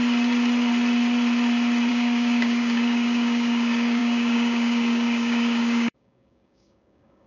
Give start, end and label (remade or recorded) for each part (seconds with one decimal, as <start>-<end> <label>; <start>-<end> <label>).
0.0-1.9 recorded; 1.9-7.3 remade